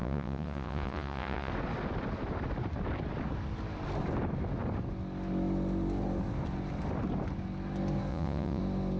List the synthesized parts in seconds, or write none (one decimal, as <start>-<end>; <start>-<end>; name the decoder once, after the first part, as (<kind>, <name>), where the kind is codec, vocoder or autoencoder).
0.0-1.5 (vocoder, Vocos); 8.1-8.6